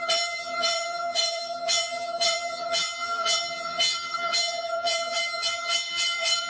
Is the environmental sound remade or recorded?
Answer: remade